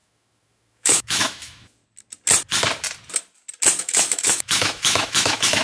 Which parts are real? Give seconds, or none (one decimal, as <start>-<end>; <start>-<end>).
1.8-3.8